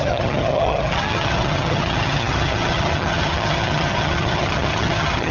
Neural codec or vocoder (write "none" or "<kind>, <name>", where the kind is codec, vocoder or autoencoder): vocoder, HiFi-GAN